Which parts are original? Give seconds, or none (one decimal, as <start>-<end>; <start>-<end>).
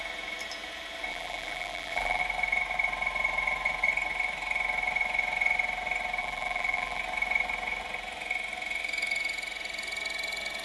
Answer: 0.0-1.1; 2.2-6.2; 7.0-10.6